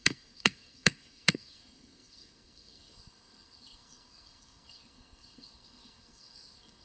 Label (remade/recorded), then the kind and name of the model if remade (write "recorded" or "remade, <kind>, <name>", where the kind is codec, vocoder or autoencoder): remade, codec, SNAC